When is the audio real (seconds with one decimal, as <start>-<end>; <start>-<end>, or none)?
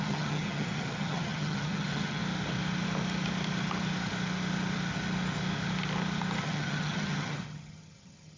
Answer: 2.2-6.4